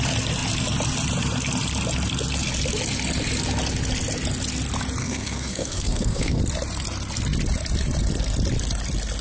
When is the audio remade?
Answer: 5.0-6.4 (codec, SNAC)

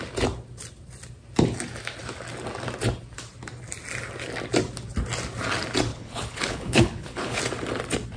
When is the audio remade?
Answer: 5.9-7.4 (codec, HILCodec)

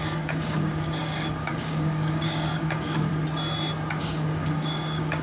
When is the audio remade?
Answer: 0.0-3.1 (codec, DAC); 4.0-5.2

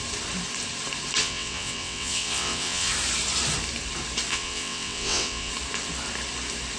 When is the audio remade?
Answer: 1.2-2.9 (vocoder, WaveNeXt); 4.3-5.5

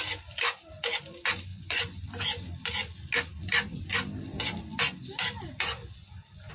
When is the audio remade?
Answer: 1.5-2.0 (vocoder, Vocos)

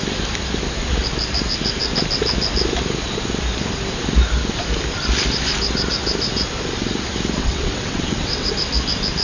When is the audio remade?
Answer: 7.4-8.5 (vocoder, WaveNeXt)